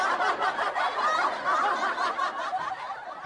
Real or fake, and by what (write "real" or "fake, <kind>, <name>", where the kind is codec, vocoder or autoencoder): real